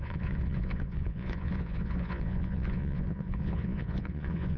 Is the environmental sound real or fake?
fake